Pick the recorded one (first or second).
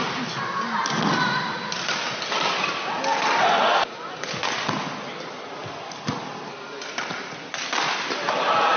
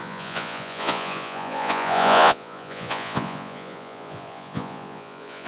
first